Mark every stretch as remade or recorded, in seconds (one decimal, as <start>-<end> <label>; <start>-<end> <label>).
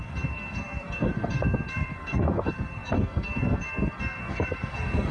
0.0-5.1 remade